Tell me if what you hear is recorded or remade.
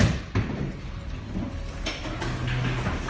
recorded